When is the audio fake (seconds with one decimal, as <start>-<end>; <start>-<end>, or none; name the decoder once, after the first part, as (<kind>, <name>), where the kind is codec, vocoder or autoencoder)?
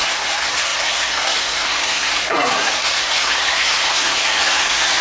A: 0.0-5.0 (codec, SNAC)